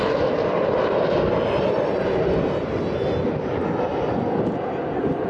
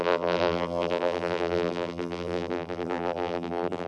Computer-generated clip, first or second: second